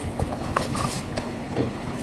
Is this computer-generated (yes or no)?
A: yes